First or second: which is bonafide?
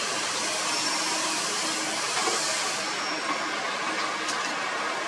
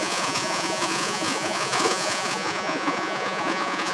first